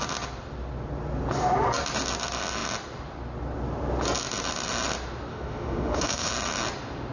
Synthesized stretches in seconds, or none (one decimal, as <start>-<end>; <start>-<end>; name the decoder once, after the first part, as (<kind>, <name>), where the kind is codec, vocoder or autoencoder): 5.3-6.3 (autoencoder, DAC-VAE)